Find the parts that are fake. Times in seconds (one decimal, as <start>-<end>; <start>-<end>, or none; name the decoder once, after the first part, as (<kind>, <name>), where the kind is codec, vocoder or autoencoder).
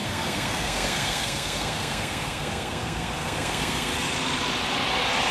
0.0-3.9 (codec, SNAC)